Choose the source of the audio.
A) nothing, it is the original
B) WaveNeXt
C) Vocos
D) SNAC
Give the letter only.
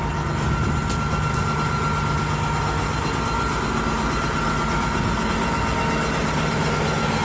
A